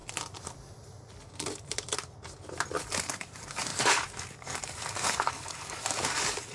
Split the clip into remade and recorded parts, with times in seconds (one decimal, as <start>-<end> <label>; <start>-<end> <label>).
0.0-2.8 recorded; 2.8-6.5 remade